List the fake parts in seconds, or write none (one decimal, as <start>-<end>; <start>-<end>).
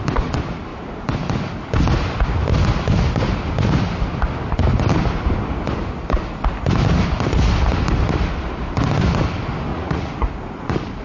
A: 9.7-10.3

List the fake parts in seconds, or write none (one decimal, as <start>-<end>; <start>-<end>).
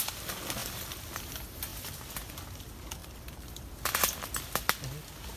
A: 0.6-1.2; 1.7-2.3; 3.0-3.8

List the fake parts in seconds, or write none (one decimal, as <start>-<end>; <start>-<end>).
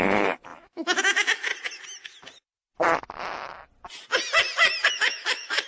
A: 0.0-1.5; 4.9-5.7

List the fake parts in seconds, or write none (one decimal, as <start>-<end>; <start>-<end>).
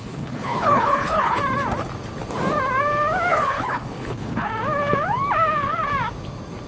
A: 0.0-1.4; 3.3-4.5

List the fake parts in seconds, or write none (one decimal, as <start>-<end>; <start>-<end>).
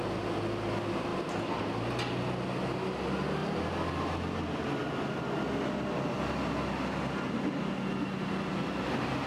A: none